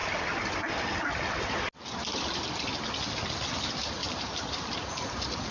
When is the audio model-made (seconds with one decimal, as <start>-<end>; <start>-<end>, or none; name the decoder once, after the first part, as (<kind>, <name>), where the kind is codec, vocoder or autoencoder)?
4.0-4.6 (vocoder, BigVGAN v2)